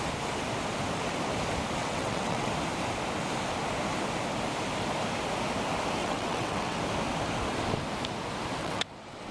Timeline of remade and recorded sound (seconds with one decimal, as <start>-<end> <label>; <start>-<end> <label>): 0.0-1.8 recorded; 1.8-2.5 remade; 2.5-6.0 recorded; 6.0-6.8 remade; 6.8-8.6 recorded; 8.6-9.3 remade